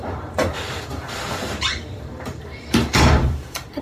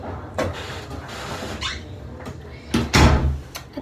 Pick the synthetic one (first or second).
first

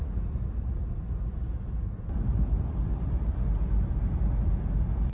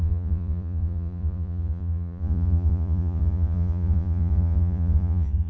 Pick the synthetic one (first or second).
second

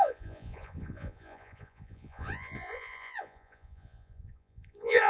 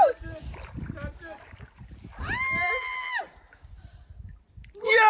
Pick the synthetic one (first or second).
first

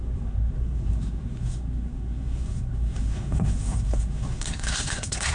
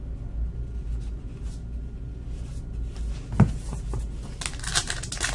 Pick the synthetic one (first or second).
first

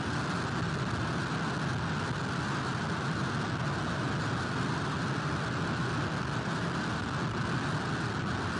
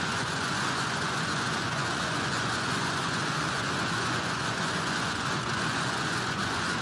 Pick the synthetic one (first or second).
second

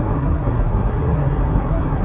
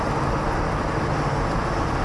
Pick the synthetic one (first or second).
first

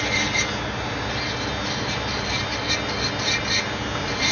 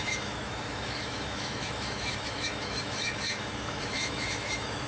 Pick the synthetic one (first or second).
second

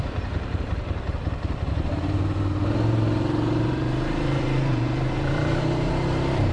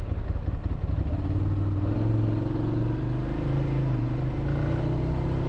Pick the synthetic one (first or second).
first